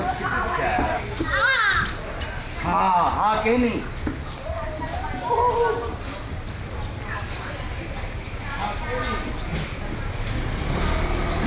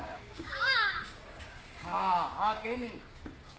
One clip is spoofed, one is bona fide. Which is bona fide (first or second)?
first